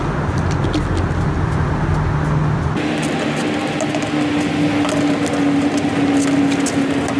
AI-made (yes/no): no